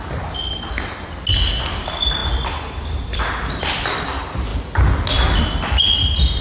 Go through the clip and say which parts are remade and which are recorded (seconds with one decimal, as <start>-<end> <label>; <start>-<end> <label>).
0.0-6.4 recorded